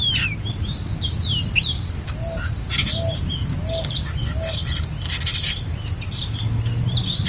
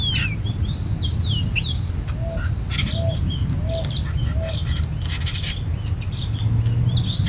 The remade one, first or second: first